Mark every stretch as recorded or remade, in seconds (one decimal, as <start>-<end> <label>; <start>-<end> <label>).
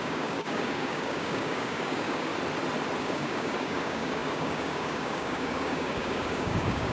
0.0-2.3 remade; 2.3-3.0 recorded; 3.0-6.9 remade